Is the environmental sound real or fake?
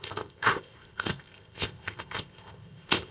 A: fake